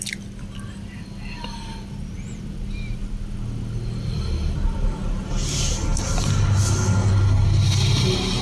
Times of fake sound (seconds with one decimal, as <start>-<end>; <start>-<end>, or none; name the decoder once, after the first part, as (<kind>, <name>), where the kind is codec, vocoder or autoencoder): none